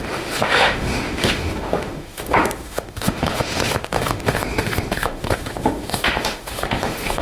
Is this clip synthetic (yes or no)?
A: yes